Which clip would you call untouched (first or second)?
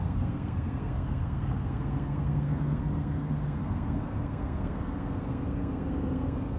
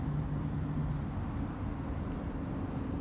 second